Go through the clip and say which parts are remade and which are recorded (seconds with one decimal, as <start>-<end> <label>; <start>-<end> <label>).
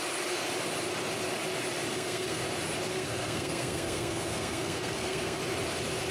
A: 0.0-1.9 recorded; 1.9-2.4 remade; 2.4-2.9 recorded; 2.9-5.4 remade; 5.4-6.1 recorded